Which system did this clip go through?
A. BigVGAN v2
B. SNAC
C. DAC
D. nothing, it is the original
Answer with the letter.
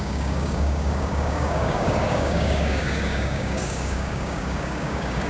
C